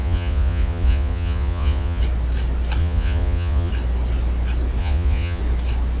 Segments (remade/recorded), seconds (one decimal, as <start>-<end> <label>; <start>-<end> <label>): 0.0-2.0 remade; 2.0-2.8 recorded; 2.8-3.7 remade; 3.7-4.8 recorded; 4.8-5.4 remade; 5.4-6.0 recorded